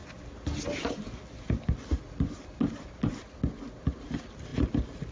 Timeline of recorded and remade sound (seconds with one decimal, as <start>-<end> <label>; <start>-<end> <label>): 0.0-5.1 recorded